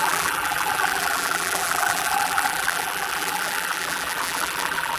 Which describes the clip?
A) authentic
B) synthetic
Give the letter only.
B